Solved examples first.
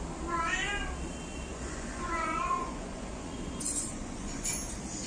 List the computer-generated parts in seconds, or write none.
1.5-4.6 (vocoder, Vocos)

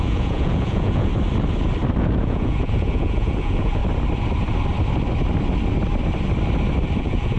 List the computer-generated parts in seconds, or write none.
0.0-1.1 (vocoder, Vocos); 2.0-3.8; 7.0-7.4